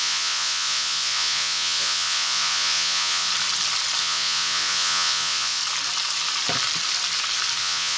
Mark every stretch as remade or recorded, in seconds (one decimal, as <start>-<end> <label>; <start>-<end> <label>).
0.0-3.3 remade; 3.3-4.0 recorded; 4.0-5.6 remade; 5.6-7.6 recorded; 7.6-8.0 remade